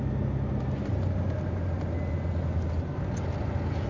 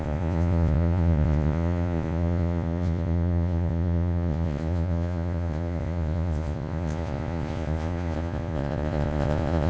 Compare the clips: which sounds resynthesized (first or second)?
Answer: second